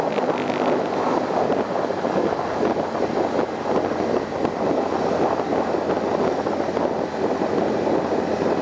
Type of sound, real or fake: real